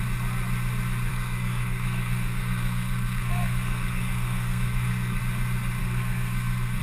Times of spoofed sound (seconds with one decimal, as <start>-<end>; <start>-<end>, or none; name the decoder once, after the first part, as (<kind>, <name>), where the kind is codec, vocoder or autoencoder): 1.1-5.2 (codec, SNAC); 5.8-6.8